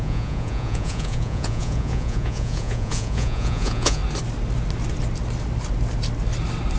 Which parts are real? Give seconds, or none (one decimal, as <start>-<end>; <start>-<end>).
4.0-6.8